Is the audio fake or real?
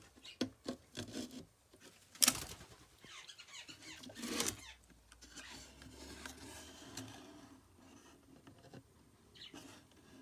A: real